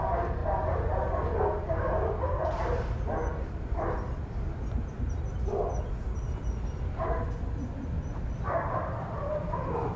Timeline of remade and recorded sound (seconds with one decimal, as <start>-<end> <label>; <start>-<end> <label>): 0.0-10.0 recorded